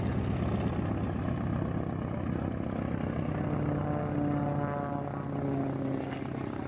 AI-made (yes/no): no